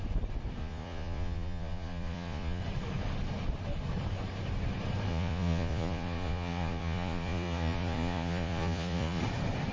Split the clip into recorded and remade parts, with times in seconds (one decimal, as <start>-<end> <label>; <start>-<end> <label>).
0.0-0.6 recorded; 0.6-2.6 remade; 2.6-5.1 recorded; 5.1-9.2 remade; 9.2-9.7 recorded

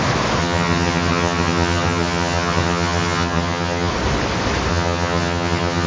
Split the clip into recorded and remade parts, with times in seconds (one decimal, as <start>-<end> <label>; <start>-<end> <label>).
0.0-0.4 recorded; 0.4-3.9 remade; 3.9-4.7 recorded; 4.7-5.9 remade

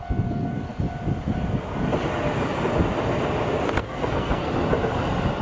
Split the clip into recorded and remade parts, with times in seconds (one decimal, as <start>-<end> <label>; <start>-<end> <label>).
0.0-3.8 recorded; 3.8-4.5 remade; 4.5-5.4 recorded

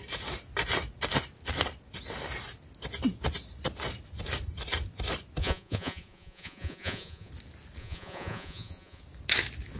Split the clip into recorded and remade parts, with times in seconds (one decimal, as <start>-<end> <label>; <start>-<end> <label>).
0.0-5.4 recorded; 5.4-7.3 remade; 7.3-7.8 recorded; 7.8-9.0 remade; 9.0-9.8 recorded

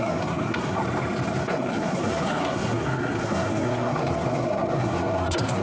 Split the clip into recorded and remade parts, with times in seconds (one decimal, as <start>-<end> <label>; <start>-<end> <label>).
0.0-0.8 remade; 0.8-1.4 recorded; 1.4-5.6 remade

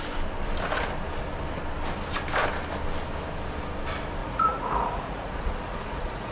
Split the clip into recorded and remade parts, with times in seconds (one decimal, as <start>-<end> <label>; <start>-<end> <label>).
0.0-4.2 recorded; 4.2-6.3 remade

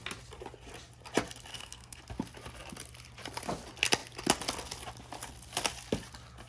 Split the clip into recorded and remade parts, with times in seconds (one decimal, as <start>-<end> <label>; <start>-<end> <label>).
0.0-1.5 recorded; 1.5-2.0 remade; 2.0-6.5 recorded

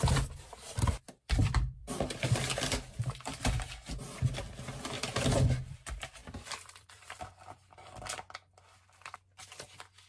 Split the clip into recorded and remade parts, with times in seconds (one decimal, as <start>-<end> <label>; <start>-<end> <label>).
0.0-1.4 recorded; 1.4-2.5 remade; 2.5-5.1 recorded; 5.1-5.8 remade; 5.8-6.2 recorded; 6.2-7.2 remade; 7.2-10.1 recorded